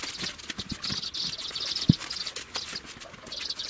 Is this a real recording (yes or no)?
yes